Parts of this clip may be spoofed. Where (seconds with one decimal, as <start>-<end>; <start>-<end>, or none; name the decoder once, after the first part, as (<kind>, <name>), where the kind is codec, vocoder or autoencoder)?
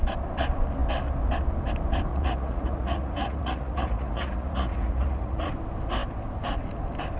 2.1-5.5 (vocoder, Vocos)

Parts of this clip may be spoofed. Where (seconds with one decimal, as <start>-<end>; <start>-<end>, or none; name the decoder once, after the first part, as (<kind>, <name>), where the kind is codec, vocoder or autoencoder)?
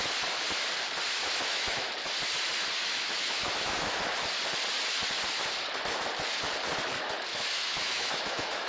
1.2-1.9 (autoencoder, DAC-VAE); 2.8-4.0; 7.3-8.7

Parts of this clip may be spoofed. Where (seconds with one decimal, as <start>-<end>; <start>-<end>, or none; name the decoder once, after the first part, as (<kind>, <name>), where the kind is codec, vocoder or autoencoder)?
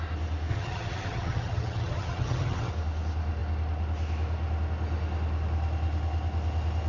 0.5-2.7 (vocoder, HiFi-GAN)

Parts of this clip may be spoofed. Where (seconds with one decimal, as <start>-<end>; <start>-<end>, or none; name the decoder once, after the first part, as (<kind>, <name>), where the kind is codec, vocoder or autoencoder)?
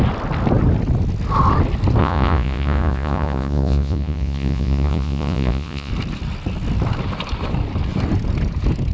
2.0-5.9 (vocoder, Vocos)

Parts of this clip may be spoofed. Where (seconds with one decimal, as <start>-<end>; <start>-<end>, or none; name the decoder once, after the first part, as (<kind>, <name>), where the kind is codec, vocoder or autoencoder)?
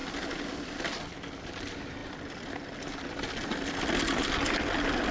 none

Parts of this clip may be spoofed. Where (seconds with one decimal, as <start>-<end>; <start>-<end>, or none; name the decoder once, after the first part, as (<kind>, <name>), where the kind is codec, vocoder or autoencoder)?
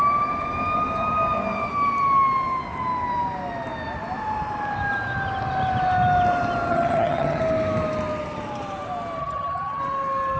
6.7-7.4 (vocoder, HiFi-GAN); 9.2-9.8